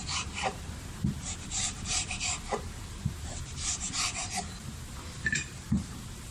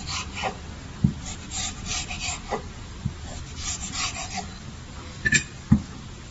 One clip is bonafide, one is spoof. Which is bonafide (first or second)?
second